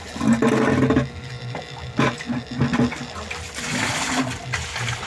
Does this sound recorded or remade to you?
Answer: recorded